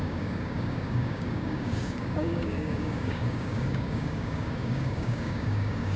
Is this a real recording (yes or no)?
no